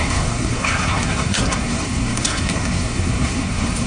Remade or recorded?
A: remade